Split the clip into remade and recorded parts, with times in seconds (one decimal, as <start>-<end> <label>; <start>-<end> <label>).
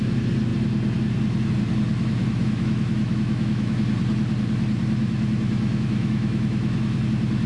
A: 0.0-2.2 recorded; 2.2-3.8 remade; 3.8-5.0 recorded; 5.0-7.0 remade; 7.0-7.5 recorded